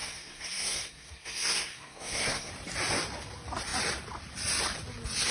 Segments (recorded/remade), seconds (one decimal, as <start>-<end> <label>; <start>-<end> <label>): 0.0-2.5 remade; 2.5-5.3 recorded